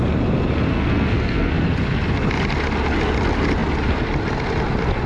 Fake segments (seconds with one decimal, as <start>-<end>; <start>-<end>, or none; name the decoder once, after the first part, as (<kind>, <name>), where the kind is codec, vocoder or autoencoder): 0.7-1.5 (codec, SNAC)